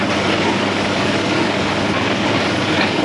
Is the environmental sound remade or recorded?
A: remade